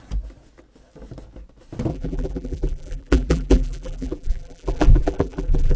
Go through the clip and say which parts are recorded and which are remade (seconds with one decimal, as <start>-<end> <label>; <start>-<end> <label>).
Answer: 0.0-1.9 recorded; 1.9-5.8 remade